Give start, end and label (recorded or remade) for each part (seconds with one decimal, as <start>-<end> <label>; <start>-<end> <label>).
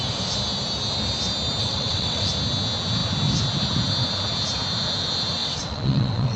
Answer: 0.0-1.6 recorded; 1.6-2.3 remade; 2.3-5.4 recorded; 5.4-6.4 remade